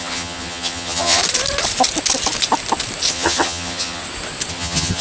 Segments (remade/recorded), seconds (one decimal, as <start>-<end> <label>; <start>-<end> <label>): 0.0-1.2 remade; 1.2-3.1 recorded; 3.1-4.0 remade; 4.0-4.5 recorded; 4.5-5.0 remade